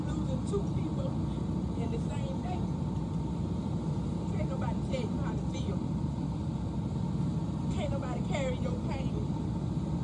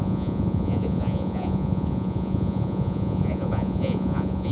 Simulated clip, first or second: second